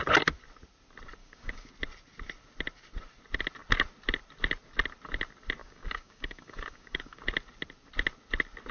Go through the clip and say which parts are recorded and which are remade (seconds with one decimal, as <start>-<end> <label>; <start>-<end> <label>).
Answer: 0.0-1.2 recorded; 1.2-1.7 remade; 1.7-5.6 recorded; 5.6-7.2 remade; 7.2-8.7 recorded